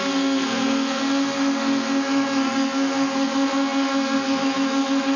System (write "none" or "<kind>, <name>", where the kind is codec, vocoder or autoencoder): codec, SNAC